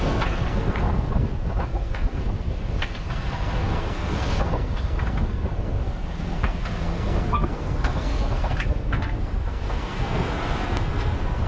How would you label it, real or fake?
fake